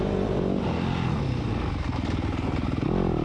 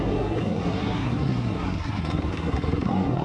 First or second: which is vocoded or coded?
second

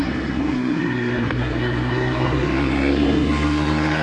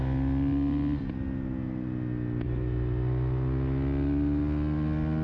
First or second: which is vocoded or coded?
first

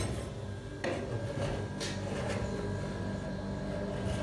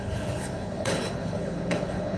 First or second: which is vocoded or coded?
second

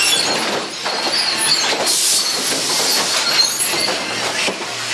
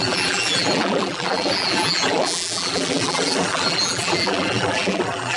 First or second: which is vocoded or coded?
second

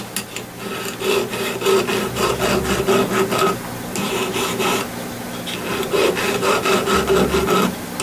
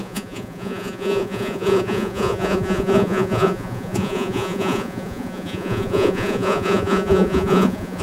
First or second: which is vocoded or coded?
second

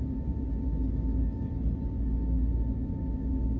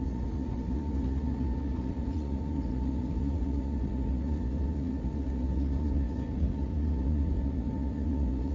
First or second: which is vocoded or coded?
second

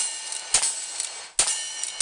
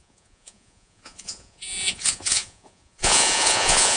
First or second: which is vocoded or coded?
second